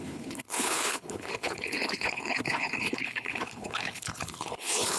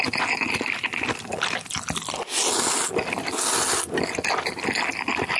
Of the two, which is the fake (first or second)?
first